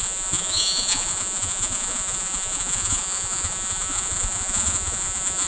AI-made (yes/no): yes